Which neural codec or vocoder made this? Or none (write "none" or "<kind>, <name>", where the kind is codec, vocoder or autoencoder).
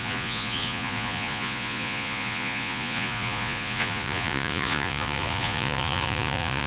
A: vocoder, Vocos